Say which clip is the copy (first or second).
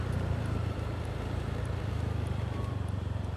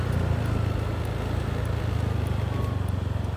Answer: first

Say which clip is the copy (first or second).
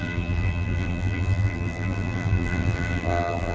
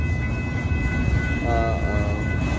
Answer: first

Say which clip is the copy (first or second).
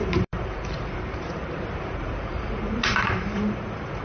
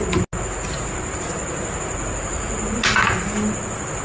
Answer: first